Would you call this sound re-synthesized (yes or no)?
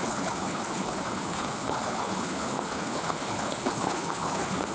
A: yes